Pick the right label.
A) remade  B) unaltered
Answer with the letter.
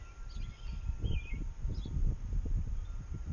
B